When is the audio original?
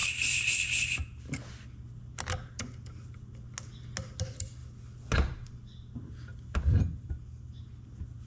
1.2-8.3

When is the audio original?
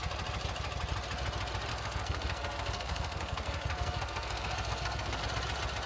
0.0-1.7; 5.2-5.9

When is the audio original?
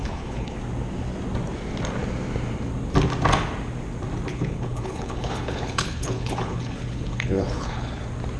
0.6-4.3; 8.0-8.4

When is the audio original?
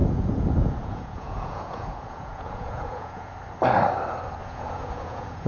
3.3-4.4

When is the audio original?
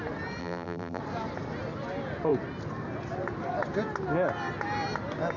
0.0-0.4; 1.0-5.4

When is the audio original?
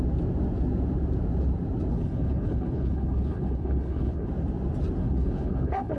0.0-1.9; 4.3-5.0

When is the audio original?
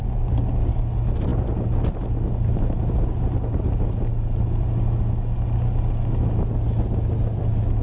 0.0-7.8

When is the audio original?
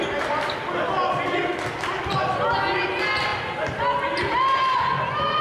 0.0-5.4